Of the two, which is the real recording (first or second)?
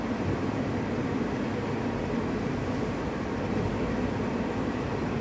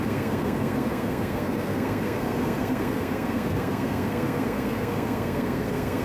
first